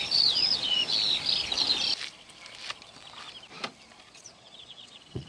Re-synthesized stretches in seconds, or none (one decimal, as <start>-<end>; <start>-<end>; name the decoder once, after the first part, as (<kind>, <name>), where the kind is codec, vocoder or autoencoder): 0.0-0.9 (vocoder, Vocos); 4.1-5.3